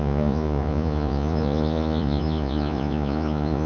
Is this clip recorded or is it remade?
remade